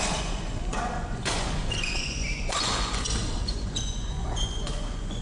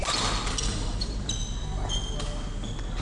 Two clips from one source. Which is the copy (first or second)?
first